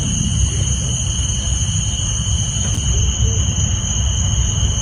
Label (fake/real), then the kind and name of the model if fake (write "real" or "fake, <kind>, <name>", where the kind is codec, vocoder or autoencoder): real